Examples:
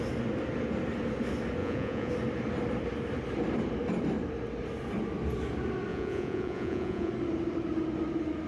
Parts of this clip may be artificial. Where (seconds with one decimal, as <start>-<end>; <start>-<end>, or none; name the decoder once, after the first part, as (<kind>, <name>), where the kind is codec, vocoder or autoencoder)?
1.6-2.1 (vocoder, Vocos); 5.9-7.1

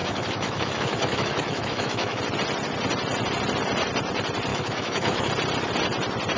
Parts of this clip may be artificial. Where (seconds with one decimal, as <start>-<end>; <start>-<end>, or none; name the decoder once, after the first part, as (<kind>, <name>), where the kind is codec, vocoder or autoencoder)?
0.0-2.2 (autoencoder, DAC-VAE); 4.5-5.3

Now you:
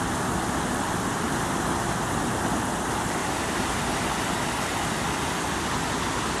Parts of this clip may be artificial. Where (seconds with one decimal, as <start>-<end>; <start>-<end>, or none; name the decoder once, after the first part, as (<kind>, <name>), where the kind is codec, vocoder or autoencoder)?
none